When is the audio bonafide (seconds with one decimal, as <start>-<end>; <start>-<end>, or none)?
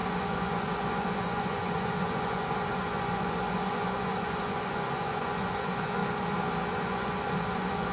6.0-6.7